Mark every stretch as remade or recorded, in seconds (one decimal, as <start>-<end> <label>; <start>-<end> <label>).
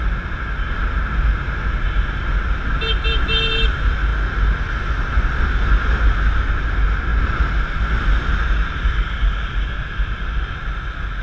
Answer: 0.0-11.2 recorded